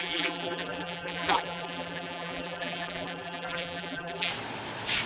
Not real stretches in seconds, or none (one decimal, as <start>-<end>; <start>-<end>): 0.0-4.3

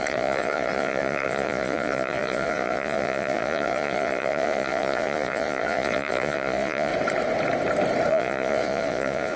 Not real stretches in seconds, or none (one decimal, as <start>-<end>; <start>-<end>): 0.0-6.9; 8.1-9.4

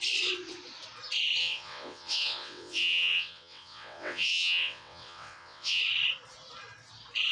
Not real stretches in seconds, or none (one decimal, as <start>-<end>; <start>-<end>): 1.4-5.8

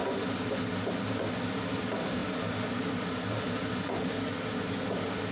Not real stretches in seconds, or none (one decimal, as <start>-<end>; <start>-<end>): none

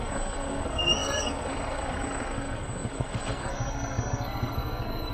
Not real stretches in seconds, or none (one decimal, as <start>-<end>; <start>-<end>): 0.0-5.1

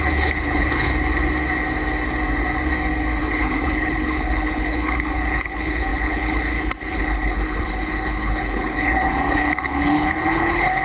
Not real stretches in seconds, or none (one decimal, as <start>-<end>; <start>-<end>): 0.0-0.9; 3.2-10.8